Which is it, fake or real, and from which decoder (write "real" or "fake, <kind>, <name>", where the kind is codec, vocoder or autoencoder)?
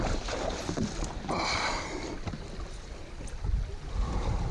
real